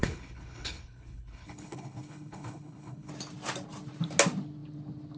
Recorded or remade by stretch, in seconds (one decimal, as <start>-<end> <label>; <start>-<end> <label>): 0.0-3.1 remade; 3.1-5.2 recorded